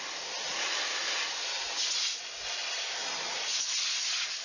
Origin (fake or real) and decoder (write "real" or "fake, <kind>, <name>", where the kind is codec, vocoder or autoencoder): real